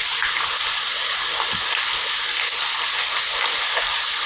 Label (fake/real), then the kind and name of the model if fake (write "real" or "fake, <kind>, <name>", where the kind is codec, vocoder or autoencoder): real